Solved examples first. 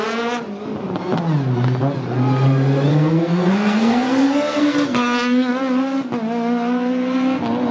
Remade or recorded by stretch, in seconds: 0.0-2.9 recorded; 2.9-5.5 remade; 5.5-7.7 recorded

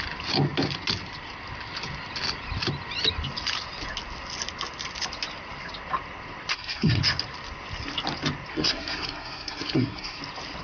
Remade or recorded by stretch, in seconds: 0.0-6.5 recorded; 6.5-7.0 remade; 7.0-8.5 recorded; 8.5-10.2 remade; 10.2-10.6 recorded

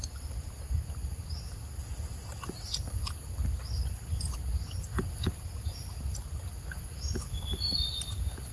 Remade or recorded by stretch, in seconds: 0.0-8.5 recorded

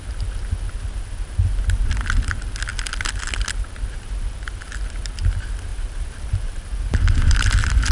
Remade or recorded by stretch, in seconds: 0.0-5.7 recorded; 5.7-7.9 remade

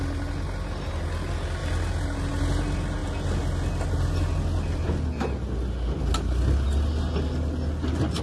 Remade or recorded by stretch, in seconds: 0.0-8.2 recorded

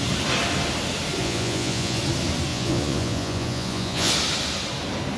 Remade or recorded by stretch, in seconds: 0.0-1.2 recorded; 1.2-2.0 remade; 2.0-2.5 recorded; 2.5-4.1 remade; 4.1-5.2 recorded

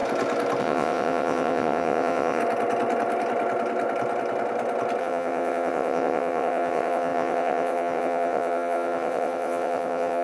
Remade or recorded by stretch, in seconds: 0.0-0.6 recorded; 0.6-2.4 remade; 2.4-5.0 recorded; 5.0-10.2 remade